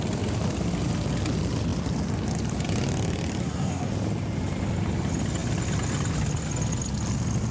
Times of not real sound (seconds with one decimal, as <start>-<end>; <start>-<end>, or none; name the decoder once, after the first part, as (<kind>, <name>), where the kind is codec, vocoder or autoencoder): 3.4-3.9 (codec, SNAC)